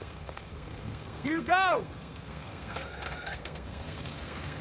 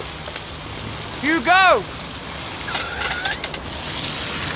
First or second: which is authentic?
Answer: second